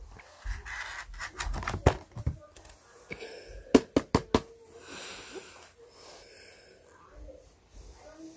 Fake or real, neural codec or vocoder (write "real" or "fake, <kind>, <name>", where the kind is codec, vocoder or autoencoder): real